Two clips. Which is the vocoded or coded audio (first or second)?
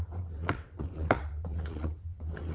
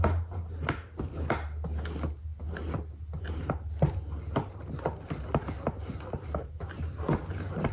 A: first